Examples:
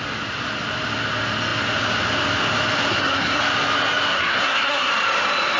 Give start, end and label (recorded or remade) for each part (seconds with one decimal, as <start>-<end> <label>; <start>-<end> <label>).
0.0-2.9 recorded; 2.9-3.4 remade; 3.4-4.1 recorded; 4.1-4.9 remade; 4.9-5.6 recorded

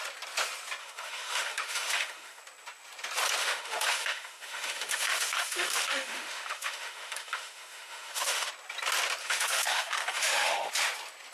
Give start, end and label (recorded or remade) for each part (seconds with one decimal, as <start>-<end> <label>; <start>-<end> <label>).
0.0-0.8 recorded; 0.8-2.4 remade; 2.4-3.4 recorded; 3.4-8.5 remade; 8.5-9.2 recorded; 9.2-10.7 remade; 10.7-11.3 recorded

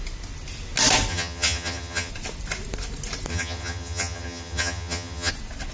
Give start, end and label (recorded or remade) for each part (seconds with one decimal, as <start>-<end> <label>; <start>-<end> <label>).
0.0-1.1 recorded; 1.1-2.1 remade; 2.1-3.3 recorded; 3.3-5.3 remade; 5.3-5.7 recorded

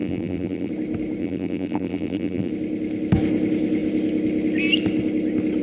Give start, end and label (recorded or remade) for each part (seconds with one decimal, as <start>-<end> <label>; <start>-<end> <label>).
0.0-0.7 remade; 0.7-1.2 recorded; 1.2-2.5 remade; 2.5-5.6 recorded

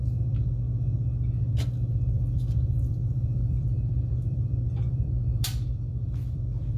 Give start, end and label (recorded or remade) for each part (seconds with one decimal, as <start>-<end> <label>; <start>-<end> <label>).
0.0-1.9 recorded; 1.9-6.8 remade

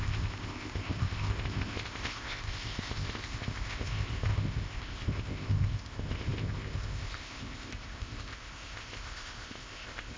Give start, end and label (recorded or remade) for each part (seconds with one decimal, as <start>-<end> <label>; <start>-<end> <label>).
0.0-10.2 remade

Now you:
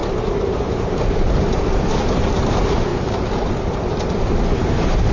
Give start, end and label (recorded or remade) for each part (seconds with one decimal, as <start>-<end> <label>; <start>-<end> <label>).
0.0-2.0 remade; 2.0-2.9 recorded; 2.9-5.1 remade